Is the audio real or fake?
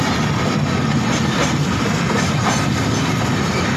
real